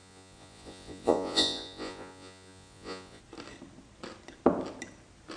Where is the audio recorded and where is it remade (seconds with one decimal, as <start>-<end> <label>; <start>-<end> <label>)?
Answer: 0.0-3.2 remade; 3.2-5.4 recorded